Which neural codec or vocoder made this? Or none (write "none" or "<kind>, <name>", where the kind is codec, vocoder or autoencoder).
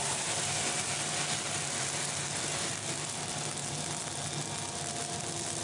none